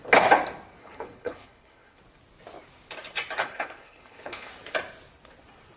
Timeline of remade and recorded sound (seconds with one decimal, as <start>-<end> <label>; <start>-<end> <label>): 0.0-0.8 recorded; 0.8-2.0 remade; 2.0-3.4 recorded; 3.4-4.5 remade; 4.5-5.8 recorded